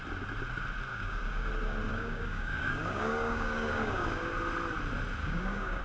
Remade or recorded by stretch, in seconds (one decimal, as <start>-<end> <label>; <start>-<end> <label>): 0.0-0.9 recorded; 0.9-1.5 remade; 1.5-1.9 recorded; 1.9-4.3 remade; 4.3-5.2 recorded; 5.2-5.8 remade

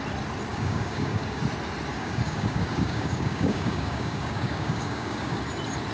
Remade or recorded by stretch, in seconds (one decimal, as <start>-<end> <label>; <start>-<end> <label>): 0.0-0.5 recorded; 0.5-1.4 remade; 1.4-1.9 recorded; 1.9-5.4 remade; 5.4-5.9 recorded

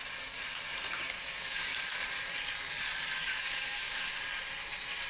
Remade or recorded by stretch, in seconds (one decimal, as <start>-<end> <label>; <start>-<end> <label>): 0.0-1.1 recorded; 1.1-1.7 remade; 1.7-3.2 recorded; 3.2-4.1 remade; 4.1-5.1 recorded